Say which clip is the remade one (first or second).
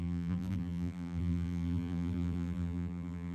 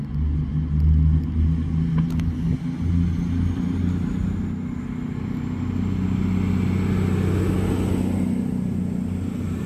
first